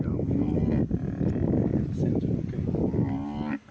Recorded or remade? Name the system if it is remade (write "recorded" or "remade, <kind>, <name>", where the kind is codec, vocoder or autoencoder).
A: recorded